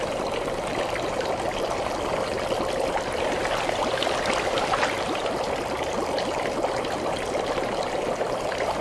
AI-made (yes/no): no